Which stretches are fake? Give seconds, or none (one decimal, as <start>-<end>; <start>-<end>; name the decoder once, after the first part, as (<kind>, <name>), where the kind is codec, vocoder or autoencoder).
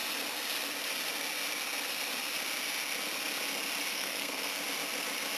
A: 3.9-4.6 (codec, SNAC)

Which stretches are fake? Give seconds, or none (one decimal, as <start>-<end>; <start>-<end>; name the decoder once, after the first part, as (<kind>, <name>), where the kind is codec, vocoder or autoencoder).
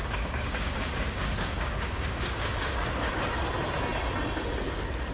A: 0.0-3.1 (codec, DAC)